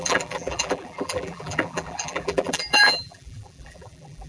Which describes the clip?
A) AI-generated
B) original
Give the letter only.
A